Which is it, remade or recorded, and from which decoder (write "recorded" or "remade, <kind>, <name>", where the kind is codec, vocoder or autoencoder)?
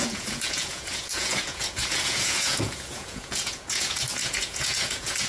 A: remade, vocoder, Vocos